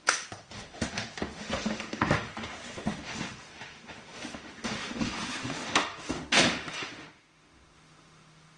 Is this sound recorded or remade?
remade